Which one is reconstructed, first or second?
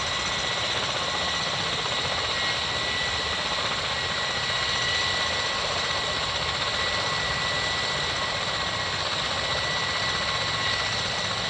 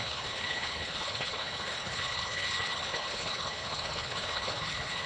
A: second